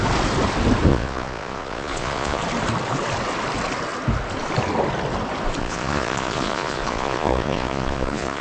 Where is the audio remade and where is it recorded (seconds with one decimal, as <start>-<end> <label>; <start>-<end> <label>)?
0.0-0.9 recorded; 0.9-2.4 remade; 2.4-5.6 recorded; 5.6-8.4 remade